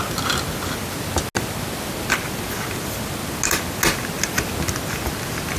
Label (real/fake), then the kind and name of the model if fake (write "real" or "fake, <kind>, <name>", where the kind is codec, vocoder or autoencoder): real